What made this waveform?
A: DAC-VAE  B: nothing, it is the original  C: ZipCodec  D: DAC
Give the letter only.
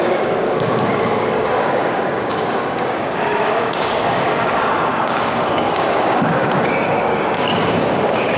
D